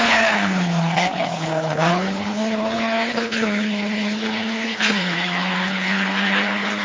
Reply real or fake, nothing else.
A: fake